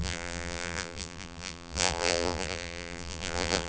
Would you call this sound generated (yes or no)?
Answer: yes